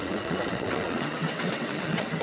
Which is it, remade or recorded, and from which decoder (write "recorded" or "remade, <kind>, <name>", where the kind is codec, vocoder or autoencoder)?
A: remade, vocoder, WaveNeXt